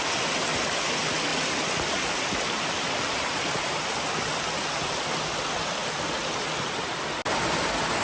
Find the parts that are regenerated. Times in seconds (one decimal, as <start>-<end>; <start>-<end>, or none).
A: none